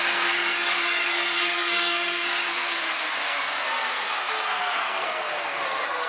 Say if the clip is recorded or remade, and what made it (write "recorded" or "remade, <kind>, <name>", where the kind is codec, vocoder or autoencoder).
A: remade, codec, SNAC